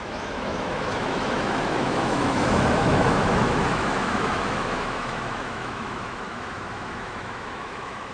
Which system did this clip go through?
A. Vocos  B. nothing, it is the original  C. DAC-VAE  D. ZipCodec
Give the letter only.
C